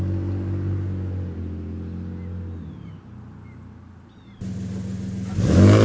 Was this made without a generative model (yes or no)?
yes